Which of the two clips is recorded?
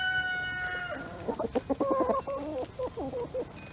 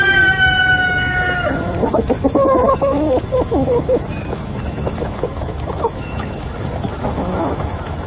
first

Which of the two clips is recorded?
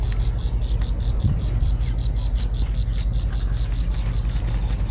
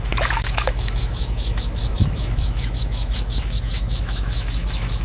first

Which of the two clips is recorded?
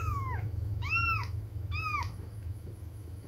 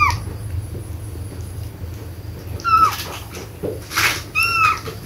second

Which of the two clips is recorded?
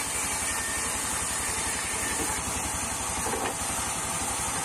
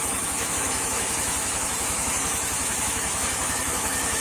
first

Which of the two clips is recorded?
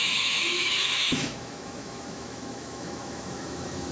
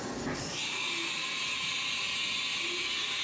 second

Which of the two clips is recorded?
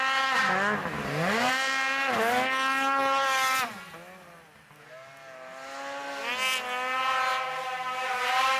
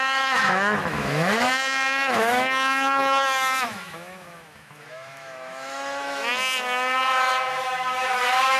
first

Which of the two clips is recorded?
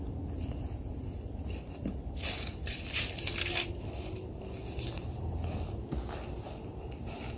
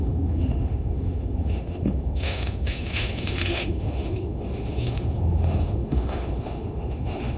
first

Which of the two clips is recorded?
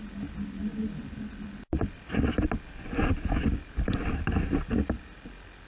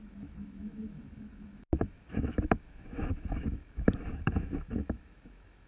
first